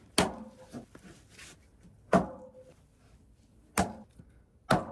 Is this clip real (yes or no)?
yes